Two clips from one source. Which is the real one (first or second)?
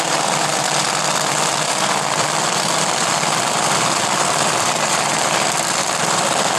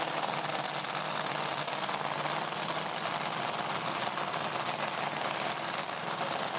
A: second